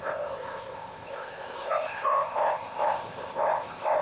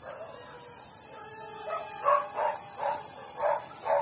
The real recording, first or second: second